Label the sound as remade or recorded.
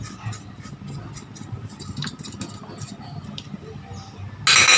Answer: recorded